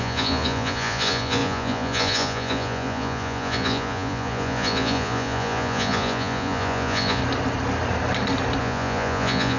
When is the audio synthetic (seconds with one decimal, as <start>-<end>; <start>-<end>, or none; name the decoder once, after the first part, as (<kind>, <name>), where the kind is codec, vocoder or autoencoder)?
0.0-7.2 (vocoder, Vocos); 8.6-9.6